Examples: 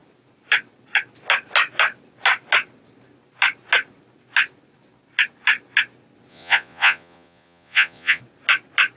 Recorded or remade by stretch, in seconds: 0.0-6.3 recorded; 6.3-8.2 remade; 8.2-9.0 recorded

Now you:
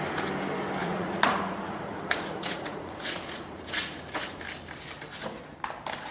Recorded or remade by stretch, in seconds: 0.0-0.8 recorded; 0.8-4.4 remade; 4.4-6.1 recorded

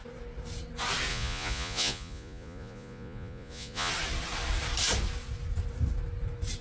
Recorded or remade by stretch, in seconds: 0.0-1.1 recorded; 1.1-3.9 remade; 3.9-6.6 recorded